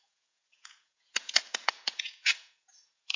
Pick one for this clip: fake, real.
fake